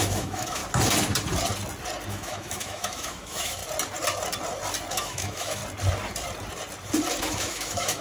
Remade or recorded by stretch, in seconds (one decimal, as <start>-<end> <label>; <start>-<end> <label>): 0.0-0.6 remade; 0.6-2.1 recorded; 2.1-3.6 remade; 3.6-4.9 recorded; 4.9-5.6 remade; 5.6-7.2 recorded; 7.2-8.0 remade